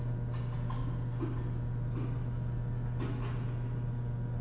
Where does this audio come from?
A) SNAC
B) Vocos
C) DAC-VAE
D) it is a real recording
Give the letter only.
D